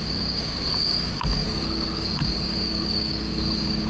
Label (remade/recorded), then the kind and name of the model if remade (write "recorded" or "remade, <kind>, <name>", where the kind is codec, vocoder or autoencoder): remade, codec, DAC